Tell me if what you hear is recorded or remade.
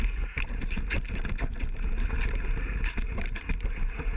recorded